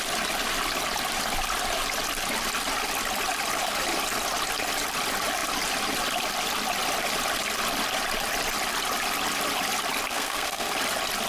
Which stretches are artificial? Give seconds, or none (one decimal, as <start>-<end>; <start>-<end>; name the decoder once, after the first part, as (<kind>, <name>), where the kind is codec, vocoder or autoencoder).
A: 10.1-10.7 (codec, SNAC)